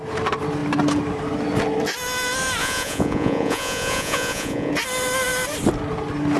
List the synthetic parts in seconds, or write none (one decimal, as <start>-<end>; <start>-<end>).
2.6-4.7

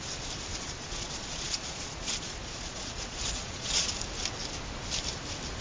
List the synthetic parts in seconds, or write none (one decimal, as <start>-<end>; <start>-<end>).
0.5-3.9

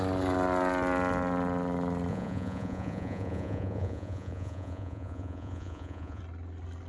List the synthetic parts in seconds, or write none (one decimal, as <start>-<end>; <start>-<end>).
2.1-6.2

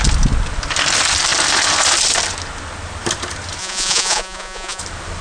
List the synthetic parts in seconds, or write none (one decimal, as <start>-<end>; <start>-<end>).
3.6-4.8

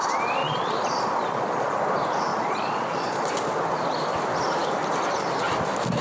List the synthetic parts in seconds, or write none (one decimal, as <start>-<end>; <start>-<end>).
0.4-1.8; 2.3-3.3

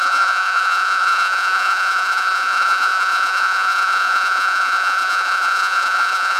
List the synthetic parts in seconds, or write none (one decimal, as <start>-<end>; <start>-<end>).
0.0-6.4

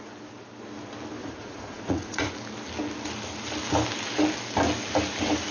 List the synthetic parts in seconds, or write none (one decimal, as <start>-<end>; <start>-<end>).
1.2-2.3

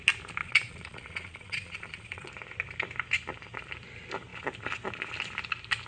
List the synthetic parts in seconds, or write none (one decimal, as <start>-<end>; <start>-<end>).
0.4-2.3